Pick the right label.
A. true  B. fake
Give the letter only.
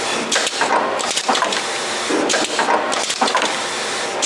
A